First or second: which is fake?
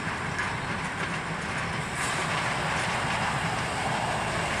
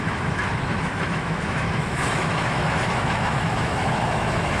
second